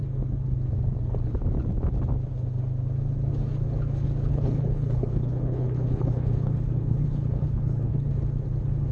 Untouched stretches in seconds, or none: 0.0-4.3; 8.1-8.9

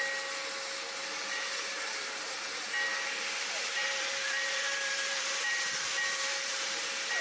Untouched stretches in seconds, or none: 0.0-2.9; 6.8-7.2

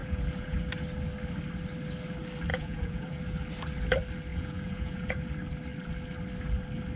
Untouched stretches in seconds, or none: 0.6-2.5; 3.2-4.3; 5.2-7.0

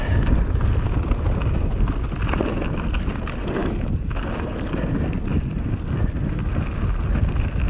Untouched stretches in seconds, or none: 0.0-7.7